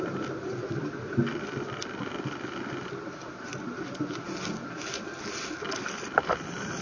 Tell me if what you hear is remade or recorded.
recorded